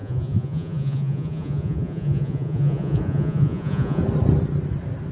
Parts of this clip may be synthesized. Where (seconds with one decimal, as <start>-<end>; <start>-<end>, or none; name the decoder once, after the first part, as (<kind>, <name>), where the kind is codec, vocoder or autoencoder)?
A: 0.0-4.0 (vocoder, Vocos)